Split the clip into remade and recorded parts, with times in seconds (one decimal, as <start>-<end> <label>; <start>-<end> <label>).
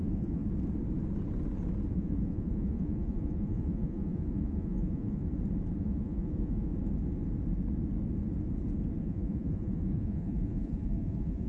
0.0-0.4 remade; 0.4-1.9 recorded; 1.9-5.2 remade; 5.2-5.8 recorded; 5.8-6.7 remade; 6.7-9.0 recorded; 9.0-11.5 remade